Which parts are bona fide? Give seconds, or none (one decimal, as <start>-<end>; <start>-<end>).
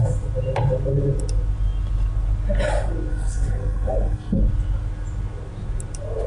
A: 0.0-3.1; 4.4-6.3